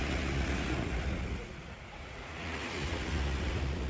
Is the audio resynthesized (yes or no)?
yes